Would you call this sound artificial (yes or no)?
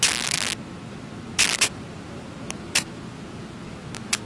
no